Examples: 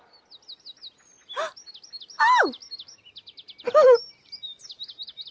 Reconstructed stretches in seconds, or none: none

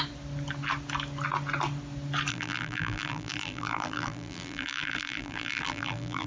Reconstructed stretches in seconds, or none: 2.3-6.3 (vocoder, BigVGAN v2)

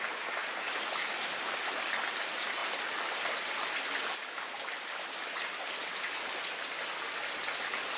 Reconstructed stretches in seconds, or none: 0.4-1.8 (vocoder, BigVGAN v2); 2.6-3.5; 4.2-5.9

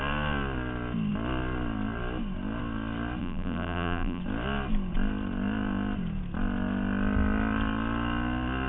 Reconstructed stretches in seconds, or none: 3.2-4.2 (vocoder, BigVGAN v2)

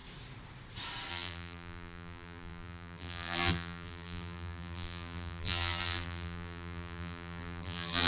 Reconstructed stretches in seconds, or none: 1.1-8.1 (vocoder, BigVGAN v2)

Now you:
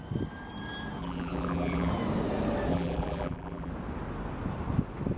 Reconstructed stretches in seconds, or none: 1.0-1.9 (vocoder, BigVGAN v2); 2.7-3.7

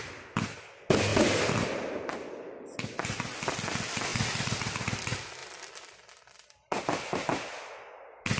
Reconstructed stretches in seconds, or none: 1.1-2.3 (vocoder, BigVGAN v2); 4.1-4.6

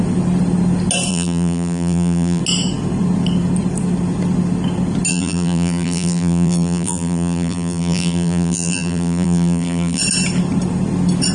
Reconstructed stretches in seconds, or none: 1.1-2.4 (vocoder, BigVGAN v2); 5.1-10.0